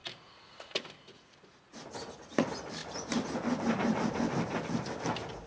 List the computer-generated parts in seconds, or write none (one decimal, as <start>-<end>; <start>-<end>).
0.0-2.0